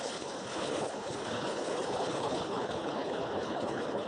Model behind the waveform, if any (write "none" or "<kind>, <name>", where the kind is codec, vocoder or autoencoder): codec, HILCodec